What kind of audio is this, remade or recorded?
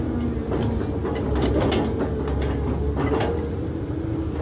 recorded